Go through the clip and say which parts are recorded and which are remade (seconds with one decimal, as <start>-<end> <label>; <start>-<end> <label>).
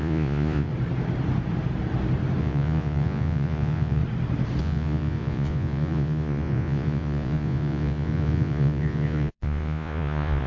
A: 0.0-0.7 remade; 0.7-2.4 recorded; 2.4-4.0 remade; 4.0-4.6 recorded; 4.6-10.5 remade